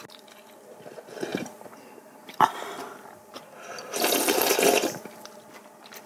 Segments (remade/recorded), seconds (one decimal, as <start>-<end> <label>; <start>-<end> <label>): 0.0-1.3 recorded; 1.3-5.0 remade; 5.0-6.1 recorded